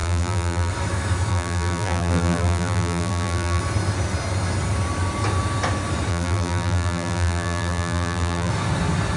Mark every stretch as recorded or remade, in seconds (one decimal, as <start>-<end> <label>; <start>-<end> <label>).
0.0-0.7 remade; 0.7-1.3 recorded; 1.3-3.6 remade; 3.6-6.1 recorded; 6.1-8.5 remade; 8.5-9.2 recorded